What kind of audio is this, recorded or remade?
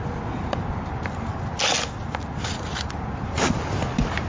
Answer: recorded